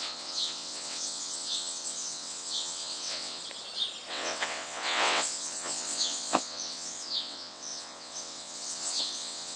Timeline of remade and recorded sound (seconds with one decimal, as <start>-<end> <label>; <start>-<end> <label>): 0.0-3.4 remade; 3.4-4.1 recorded; 4.1-9.6 remade